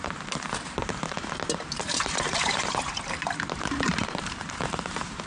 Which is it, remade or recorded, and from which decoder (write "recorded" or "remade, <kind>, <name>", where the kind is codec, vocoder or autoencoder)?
remade, vocoder, BigVGAN v2